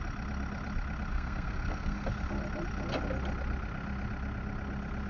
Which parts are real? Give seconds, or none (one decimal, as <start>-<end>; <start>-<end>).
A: 0.0-1.1; 2.1-5.1